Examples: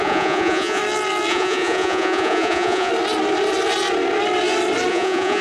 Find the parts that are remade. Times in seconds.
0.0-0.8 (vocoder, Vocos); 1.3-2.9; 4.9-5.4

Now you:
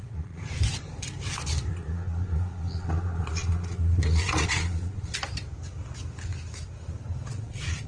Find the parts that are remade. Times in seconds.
0.0-0.4 (vocoder, Vocos); 1.7-5.1; 7.3-7.9

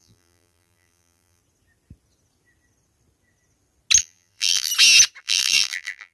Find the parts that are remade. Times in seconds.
0.0-1.4 (vocoder, BigVGAN v2); 4.0-4.7; 5.2-6.1

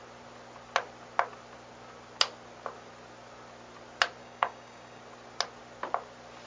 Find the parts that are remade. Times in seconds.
4.2-5.0 (codec, DAC)

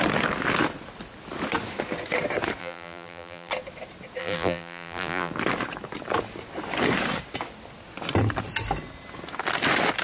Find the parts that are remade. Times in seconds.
2.6-3.5 (vocoder, BigVGAN v2); 4.2-5.3

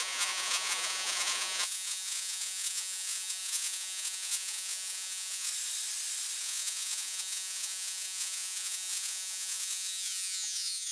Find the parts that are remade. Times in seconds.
0.0-5.5 (vocoder, Vocos); 6.4-10.9